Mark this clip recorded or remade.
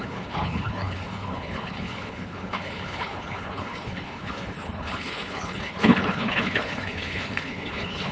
remade